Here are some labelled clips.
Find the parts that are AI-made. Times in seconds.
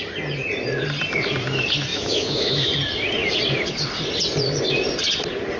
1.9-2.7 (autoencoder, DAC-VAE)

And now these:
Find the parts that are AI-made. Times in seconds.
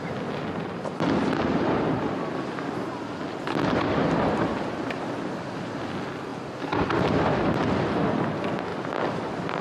none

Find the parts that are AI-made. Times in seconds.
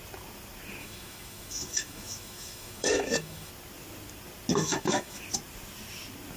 0.8-3.5 (autoencoder, DAC-VAE); 4.5-5.2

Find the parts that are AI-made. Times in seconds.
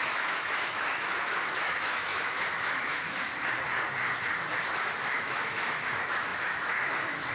0.0-3.3 (autoencoder, DAC-VAE); 4.6-7.3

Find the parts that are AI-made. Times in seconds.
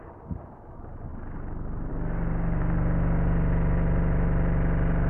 none